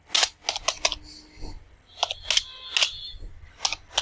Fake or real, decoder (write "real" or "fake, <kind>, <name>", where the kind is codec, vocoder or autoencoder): real